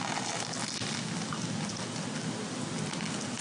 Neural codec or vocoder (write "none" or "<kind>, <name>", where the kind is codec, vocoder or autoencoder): none